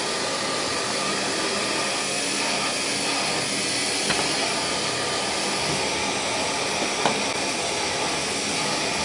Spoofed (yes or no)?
no